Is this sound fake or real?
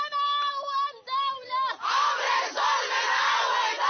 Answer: real